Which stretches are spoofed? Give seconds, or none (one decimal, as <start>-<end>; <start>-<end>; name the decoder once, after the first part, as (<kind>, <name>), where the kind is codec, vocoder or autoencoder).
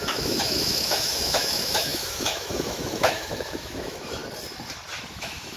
0.0-4.2 (autoencoder, DAC-VAE); 5.1-5.6